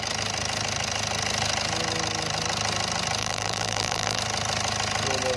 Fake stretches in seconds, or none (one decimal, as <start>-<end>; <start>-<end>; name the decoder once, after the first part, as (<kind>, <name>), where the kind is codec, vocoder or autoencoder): 3.2-4.2 (vocoder, BigVGAN v2)